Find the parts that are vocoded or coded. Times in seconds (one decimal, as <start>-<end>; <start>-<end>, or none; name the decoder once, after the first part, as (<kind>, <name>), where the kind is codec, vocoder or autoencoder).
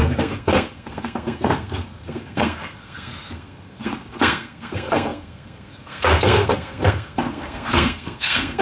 0.0-8.6 (codec, SNAC)